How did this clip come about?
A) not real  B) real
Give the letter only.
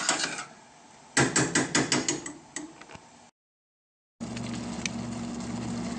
B